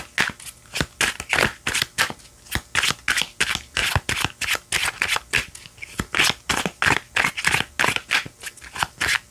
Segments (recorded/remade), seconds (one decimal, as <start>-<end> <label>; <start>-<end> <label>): 0.0-9.3 recorded